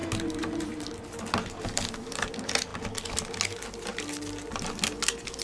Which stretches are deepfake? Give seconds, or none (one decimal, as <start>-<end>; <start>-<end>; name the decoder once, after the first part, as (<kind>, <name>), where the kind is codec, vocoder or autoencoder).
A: none